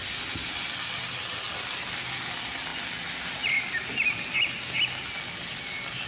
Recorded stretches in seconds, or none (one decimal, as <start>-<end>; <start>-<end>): 0.0-6.1